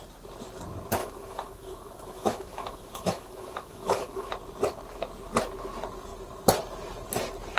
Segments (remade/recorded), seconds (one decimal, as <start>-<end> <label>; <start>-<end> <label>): 0.0-1.0 recorded; 1.0-4.3 remade; 4.3-7.6 recorded